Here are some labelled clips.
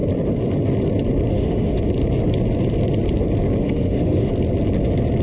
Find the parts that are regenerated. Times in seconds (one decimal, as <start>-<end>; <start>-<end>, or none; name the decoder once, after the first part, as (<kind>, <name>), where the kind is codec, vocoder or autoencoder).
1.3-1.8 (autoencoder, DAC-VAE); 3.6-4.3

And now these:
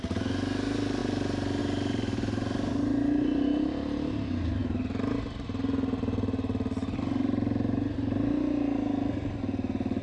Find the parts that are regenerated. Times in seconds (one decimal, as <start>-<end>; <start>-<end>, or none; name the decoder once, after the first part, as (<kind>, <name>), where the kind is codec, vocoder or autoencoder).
none

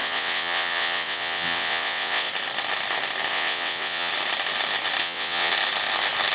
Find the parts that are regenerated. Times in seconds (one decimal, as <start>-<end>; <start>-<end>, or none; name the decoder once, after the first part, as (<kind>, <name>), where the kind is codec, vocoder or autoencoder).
0.0-2.3 (vocoder, WaveNeXt); 3.3-4.1; 5.0-5.5

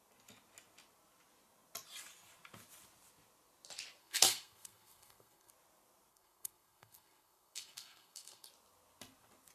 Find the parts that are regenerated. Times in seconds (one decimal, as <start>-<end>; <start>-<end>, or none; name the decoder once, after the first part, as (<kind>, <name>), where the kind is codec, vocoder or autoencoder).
4.0-5.5 (codec, SNAC); 6.1-8.5

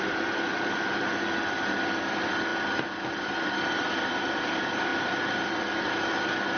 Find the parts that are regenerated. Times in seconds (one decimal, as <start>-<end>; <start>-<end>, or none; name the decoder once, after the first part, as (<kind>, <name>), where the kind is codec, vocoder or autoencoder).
0.0-2.5 (vocoder, BigVGAN v2); 3.2-6.6

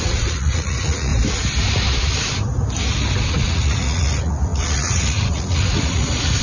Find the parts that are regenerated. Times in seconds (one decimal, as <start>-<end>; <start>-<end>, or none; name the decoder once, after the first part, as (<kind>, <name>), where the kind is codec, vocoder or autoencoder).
0.0-1.1 (vocoder, Vocos); 3.3-6.4

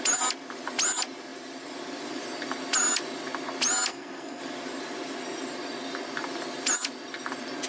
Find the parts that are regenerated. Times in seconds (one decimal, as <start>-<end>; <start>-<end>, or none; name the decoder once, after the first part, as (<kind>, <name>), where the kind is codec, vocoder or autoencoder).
3.9-4.4 (codec, SNAC)

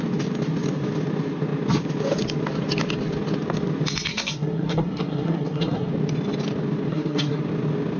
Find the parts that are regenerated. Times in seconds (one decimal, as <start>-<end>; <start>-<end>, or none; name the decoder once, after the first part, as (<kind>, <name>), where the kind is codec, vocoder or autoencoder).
4.1-5.9 (codec, SNAC); 6.9-7.4